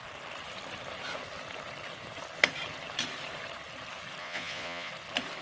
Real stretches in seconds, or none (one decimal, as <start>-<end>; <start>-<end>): 0.0-4.2; 4.9-5.4